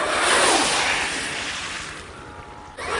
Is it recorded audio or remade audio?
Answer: recorded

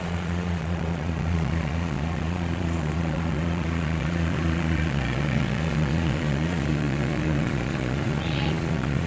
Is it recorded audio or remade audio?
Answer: remade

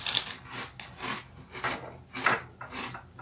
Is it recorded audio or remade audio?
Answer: recorded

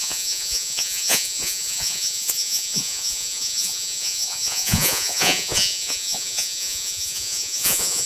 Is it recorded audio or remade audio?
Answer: remade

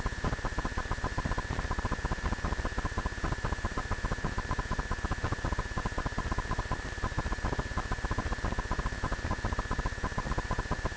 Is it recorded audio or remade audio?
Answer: recorded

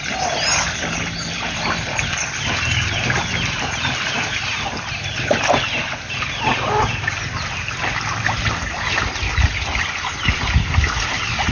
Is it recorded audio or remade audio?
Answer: recorded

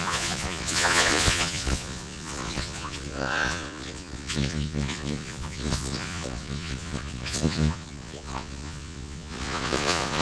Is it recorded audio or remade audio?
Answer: remade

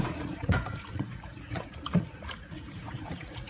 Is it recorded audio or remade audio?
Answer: remade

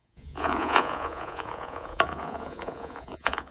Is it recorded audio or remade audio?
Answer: remade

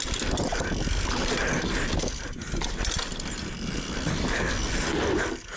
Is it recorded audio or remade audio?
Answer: recorded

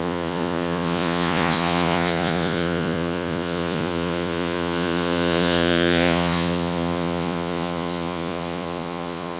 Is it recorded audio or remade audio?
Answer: remade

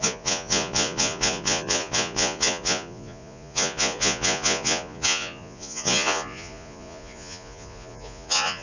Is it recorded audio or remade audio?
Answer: remade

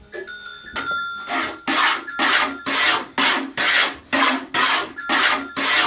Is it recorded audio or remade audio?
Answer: recorded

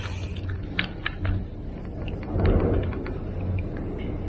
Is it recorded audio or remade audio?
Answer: recorded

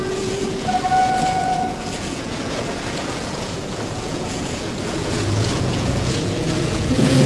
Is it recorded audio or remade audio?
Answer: remade